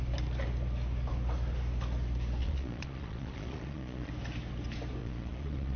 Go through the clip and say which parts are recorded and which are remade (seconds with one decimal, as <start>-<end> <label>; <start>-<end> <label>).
0.0-2.4 recorded; 2.4-4.1 remade; 4.1-5.0 recorded; 5.0-5.8 remade